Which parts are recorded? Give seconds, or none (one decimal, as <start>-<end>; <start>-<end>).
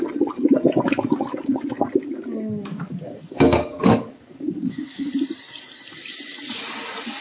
0.0-2.7; 5.1-7.2